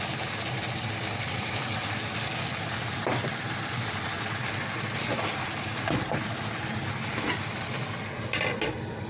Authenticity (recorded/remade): recorded